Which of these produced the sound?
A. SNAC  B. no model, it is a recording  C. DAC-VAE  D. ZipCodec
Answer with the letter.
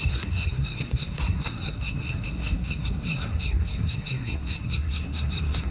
A